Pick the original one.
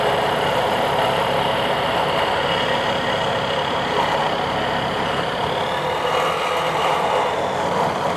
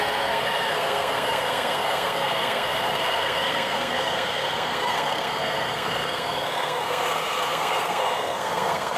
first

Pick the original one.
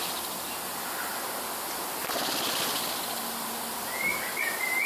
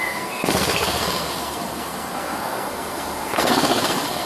first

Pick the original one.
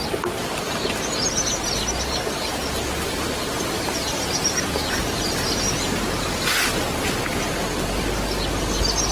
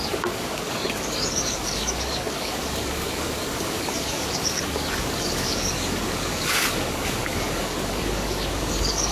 first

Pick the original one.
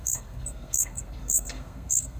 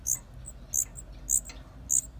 second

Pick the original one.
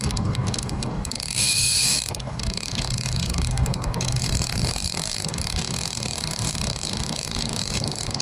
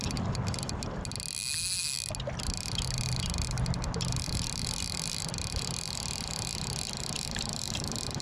second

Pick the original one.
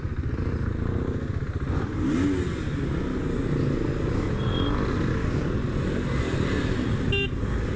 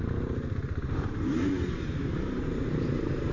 first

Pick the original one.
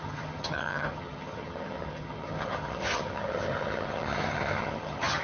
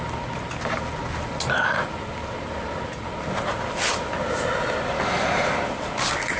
second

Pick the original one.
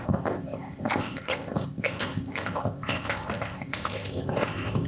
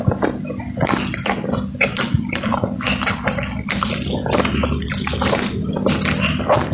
second